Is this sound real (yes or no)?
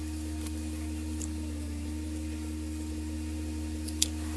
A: yes